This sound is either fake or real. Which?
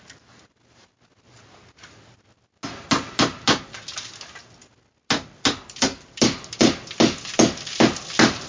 real